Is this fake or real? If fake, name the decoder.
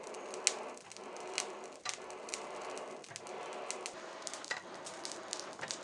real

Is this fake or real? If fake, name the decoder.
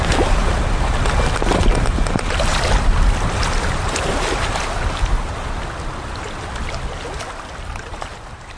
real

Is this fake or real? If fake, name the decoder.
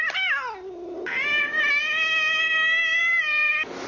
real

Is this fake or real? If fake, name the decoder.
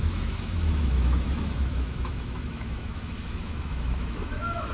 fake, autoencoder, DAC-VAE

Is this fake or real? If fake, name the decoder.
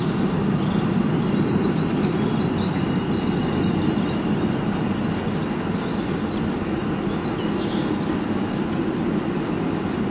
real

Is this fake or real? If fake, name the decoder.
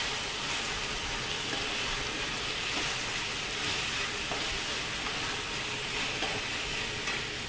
real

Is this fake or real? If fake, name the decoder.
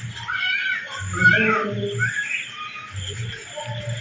real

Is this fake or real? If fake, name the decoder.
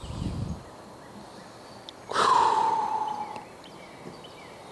real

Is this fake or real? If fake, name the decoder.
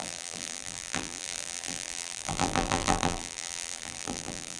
fake, vocoder, BigVGAN v2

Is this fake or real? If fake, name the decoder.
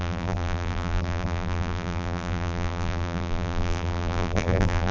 fake, vocoder, BigVGAN v2